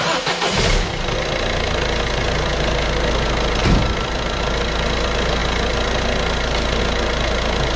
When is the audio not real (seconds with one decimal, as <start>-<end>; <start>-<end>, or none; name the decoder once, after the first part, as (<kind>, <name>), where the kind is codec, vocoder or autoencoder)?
3.6-4.4 (vocoder, BigVGAN v2)